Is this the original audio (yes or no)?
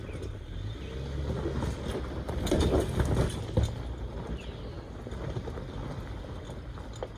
yes